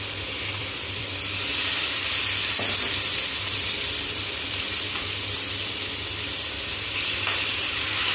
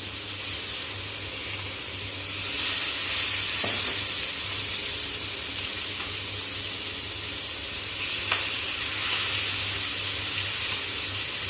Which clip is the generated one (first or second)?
first